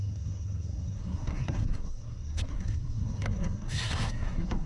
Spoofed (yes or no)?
yes